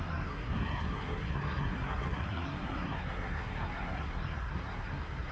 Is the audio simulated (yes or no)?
yes